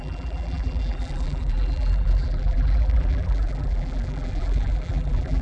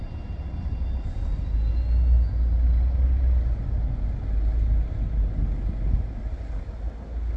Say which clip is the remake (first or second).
first